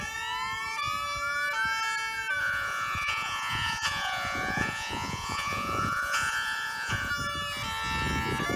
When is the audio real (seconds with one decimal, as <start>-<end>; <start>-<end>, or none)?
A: 0.0-2.4; 7.1-8.6